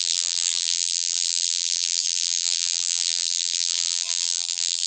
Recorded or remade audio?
remade